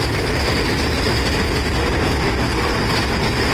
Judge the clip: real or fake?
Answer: real